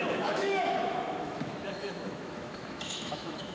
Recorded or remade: remade